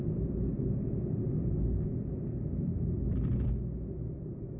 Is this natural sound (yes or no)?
yes